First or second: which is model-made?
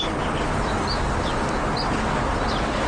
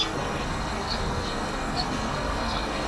second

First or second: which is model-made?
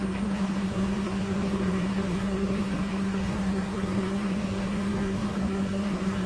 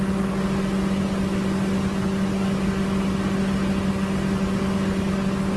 first